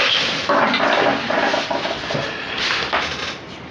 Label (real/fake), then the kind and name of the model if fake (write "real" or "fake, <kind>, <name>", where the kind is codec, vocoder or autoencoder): real